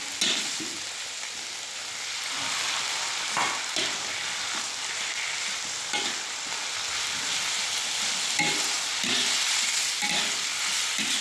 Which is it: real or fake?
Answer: real